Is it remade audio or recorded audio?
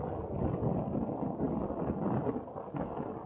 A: recorded